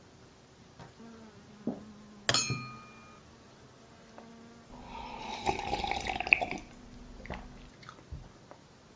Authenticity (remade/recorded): recorded